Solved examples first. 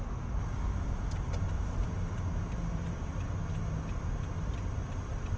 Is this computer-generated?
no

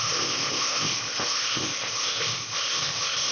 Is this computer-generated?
yes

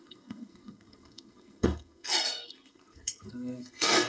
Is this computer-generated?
yes